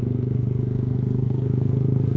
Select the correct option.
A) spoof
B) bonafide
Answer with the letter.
A